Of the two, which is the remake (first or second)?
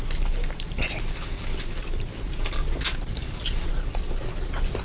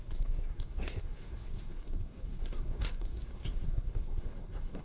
second